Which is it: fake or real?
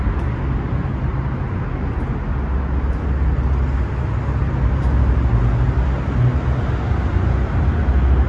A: real